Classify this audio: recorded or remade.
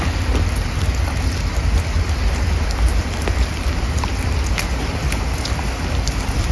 recorded